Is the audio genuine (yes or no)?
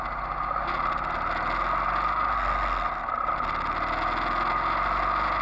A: yes